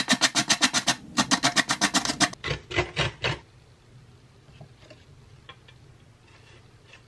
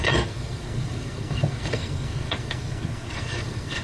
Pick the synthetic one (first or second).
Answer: second